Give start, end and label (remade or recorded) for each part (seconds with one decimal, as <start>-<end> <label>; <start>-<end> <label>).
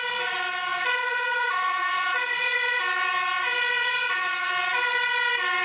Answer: 0.0-0.7 recorded; 0.7-2.8 remade; 2.8-3.8 recorded; 3.8-4.5 remade; 4.5-5.6 recorded